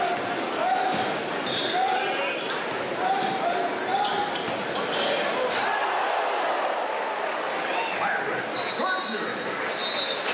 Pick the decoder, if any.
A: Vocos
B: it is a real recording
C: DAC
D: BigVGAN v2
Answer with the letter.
B